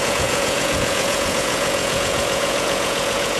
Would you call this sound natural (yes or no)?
no